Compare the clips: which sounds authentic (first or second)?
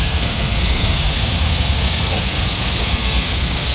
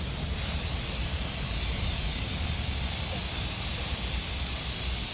second